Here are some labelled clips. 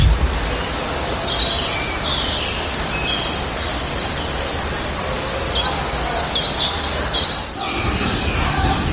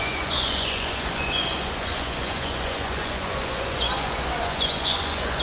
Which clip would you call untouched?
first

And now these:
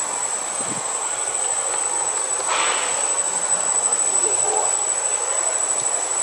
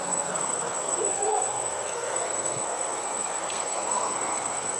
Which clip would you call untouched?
first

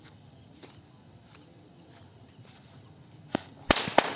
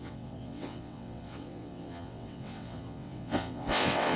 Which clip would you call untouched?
first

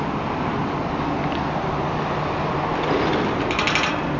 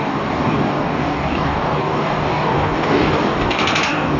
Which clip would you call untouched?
first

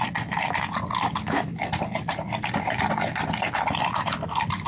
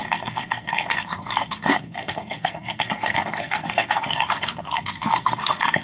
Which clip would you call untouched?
first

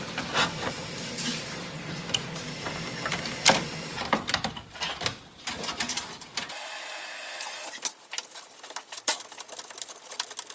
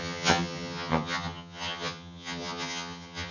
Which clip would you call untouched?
first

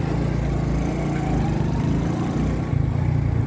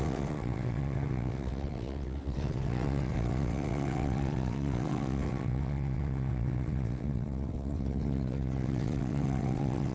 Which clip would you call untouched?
first